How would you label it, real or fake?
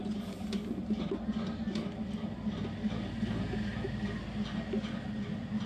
real